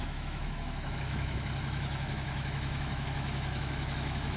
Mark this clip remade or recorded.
remade